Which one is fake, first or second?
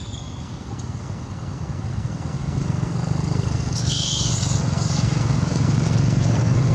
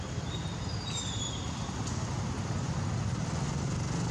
first